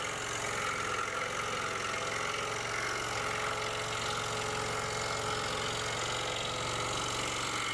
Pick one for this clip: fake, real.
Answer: real